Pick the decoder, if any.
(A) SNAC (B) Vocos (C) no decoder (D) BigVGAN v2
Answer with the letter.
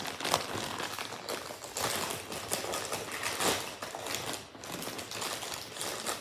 C